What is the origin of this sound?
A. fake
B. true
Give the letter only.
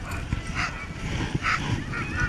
B